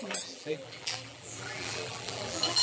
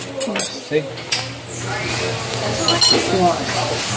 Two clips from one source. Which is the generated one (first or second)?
first